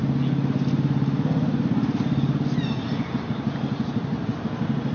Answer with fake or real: real